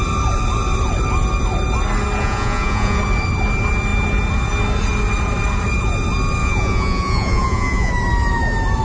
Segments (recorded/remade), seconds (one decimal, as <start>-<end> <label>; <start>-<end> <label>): 0.0-2.2 recorded; 2.2-3.0 remade; 3.0-6.4 recorded; 6.4-7.9 remade; 7.9-8.8 recorded